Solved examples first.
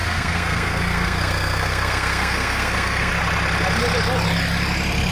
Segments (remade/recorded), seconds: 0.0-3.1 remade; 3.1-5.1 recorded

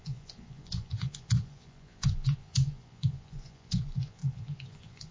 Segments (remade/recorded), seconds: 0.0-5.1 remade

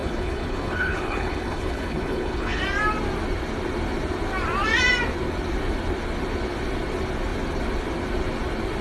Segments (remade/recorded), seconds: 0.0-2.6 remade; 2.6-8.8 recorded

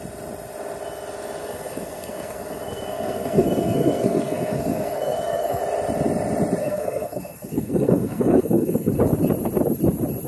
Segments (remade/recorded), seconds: 0.0-1.4 recorded; 1.4-5.6 remade; 5.6-6.6 recorded; 6.6-8.9 remade; 8.9-10.3 recorded

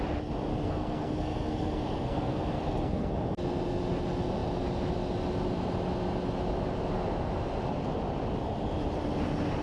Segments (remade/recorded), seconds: 0.0-0.5 recorded; 0.5-3.1 remade; 3.1-9.6 recorded

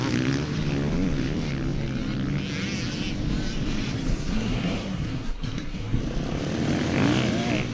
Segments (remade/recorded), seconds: 0.0-4.1 recorded; 4.1-6.0 remade; 6.0-7.7 recorded

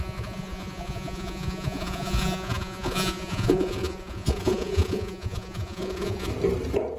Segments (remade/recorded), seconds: 0.0-6.3 remade; 6.3-7.0 recorded